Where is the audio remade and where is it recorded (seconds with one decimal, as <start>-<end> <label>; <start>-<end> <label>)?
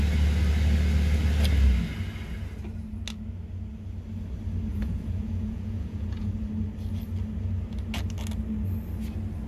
0.0-4.7 recorded; 4.7-6.3 remade; 6.3-9.5 recorded